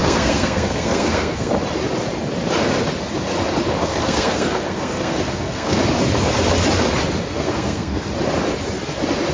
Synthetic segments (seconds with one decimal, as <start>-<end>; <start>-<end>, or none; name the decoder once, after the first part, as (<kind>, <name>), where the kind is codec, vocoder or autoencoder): 0.0-1.5 (codec, SNAC); 3.8-5.8; 7.3-8.1